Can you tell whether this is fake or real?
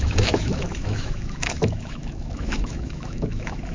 fake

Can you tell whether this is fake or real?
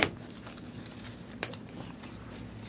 real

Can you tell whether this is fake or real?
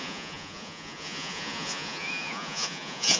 fake